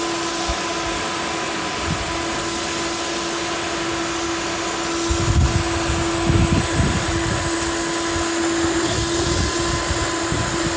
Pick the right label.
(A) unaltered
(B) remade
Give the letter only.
A